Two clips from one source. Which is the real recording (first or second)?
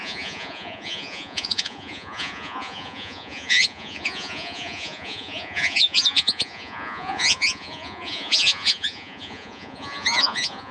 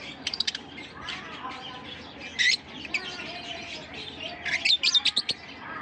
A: second